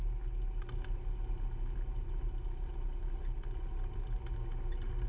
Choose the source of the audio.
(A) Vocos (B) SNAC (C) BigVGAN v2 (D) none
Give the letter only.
D